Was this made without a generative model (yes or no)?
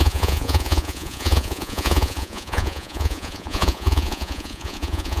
no